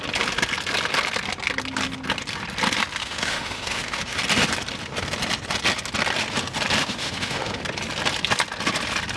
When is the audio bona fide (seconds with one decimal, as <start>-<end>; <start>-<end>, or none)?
0.0-3.0; 4.2-6.8; 7.6-9.2